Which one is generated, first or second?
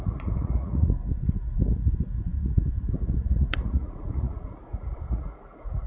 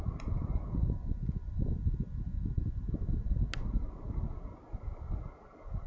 first